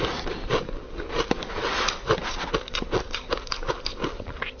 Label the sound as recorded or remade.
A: recorded